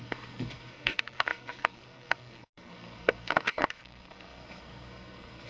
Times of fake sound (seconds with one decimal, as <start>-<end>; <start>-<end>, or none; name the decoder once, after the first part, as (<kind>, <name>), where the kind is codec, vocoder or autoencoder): 0.0-5.5 (codec, SNAC)